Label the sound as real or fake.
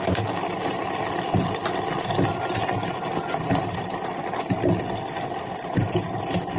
real